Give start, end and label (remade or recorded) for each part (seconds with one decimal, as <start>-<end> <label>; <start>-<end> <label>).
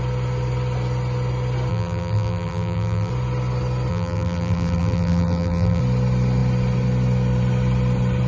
0.0-1.7 recorded; 1.7-3.1 remade; 3.1-3.9 recorded; 3.9-5.8 remade; 5.8-8.3 recorded